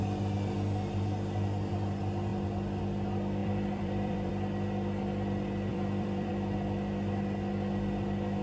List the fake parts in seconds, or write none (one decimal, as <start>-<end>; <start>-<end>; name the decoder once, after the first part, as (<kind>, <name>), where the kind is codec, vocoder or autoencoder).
3.4-4.3 (vocoder, BigVGAN v2); 5.7-6.3

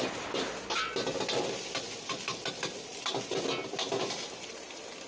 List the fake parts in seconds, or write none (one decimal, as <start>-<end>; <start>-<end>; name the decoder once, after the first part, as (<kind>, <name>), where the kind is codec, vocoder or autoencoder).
none

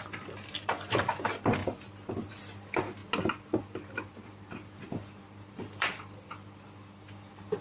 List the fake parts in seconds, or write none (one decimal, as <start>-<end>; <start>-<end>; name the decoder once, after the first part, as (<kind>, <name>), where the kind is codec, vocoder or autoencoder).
0.0-1.6 (vocoder, BigVGAN v2); 2.3-3.0; 4.5-7.6